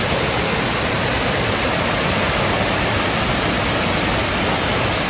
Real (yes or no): yes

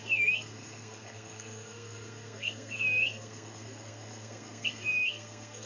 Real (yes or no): no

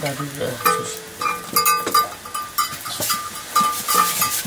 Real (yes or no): yes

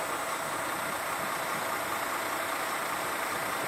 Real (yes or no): yes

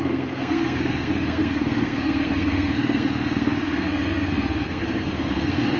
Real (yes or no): no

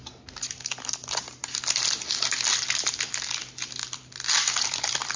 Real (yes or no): yes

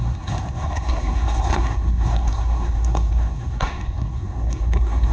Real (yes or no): no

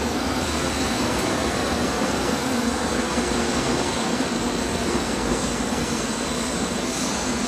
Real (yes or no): no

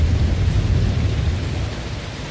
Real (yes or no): yes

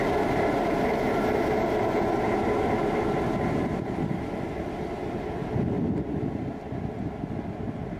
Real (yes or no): yes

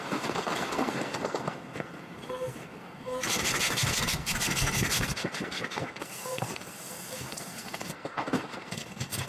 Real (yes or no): no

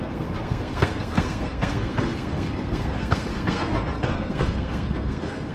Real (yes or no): no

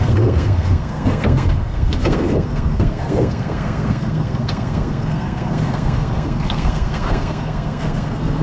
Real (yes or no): no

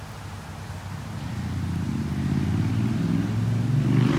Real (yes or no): yes